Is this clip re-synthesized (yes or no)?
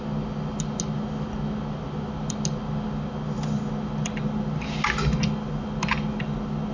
no